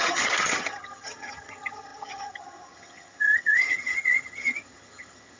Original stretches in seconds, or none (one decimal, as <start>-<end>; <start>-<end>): none